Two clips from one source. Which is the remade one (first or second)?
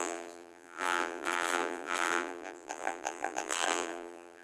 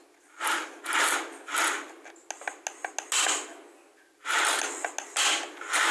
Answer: first